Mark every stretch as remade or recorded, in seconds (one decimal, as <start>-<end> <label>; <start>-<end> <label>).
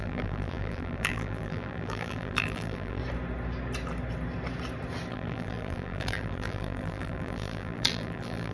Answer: 0.0-3.0 remade; 3.0-5.1 recorded; 5.1-8.5 remade